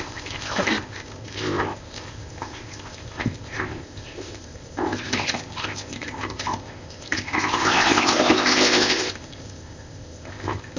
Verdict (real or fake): fake